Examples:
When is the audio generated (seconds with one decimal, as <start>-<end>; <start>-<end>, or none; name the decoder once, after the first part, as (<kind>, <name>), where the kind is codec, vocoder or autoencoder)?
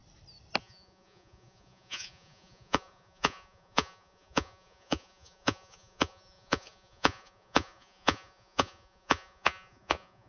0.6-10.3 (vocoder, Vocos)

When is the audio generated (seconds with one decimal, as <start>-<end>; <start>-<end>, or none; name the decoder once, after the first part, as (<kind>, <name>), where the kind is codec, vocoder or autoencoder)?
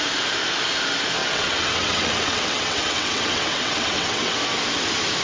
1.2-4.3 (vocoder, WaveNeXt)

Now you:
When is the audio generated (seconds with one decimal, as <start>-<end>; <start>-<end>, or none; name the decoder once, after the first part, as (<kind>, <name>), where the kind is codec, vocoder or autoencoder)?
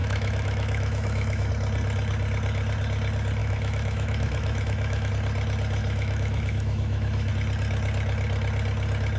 0.0-1.5 (autoencoder, DAC-VAE); 3.4-5.1; 5.8-7.3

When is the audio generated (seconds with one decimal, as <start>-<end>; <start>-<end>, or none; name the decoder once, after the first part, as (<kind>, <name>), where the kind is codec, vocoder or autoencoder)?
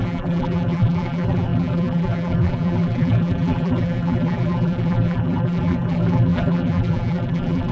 0.0-7.7 (vocoder, BigVGAN v2)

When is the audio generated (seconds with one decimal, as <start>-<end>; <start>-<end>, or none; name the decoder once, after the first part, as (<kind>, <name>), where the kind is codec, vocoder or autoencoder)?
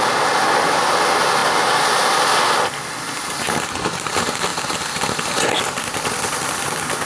none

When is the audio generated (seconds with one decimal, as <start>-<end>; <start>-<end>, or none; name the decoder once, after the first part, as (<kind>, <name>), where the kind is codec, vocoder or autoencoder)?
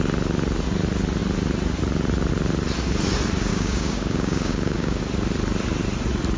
3.5-5.0 (codec, DAC)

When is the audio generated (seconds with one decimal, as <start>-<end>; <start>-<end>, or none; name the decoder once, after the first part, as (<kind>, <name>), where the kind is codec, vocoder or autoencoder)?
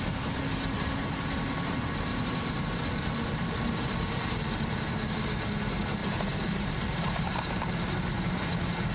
2.1-3.8 (vocoder, BigVGAN v2); 6.0-7.7